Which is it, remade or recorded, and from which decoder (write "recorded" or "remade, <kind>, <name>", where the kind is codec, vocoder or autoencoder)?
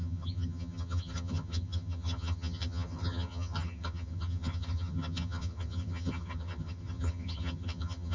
remade, vocoder, HiFi-GAN